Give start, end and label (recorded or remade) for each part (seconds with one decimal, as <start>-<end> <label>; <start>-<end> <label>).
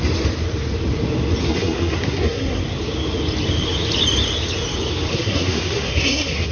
0.0-1.4 recorded; 1.4-2.6 remade; 2.6-5.1 recorded; 5.1-6.5 remade